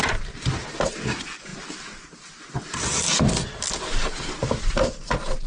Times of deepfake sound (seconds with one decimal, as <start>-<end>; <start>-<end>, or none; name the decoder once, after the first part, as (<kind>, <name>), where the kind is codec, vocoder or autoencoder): none

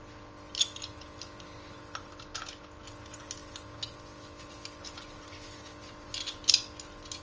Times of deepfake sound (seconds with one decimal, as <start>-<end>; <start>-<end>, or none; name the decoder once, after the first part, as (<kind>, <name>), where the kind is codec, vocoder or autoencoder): none

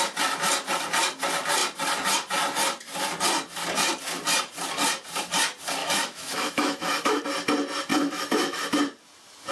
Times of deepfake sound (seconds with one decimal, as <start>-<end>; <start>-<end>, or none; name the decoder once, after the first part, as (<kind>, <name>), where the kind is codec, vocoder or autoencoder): 5.8-7.2 (autoencoder, DAC-VAE); 7.9-8.8